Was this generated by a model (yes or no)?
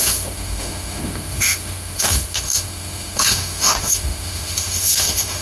yes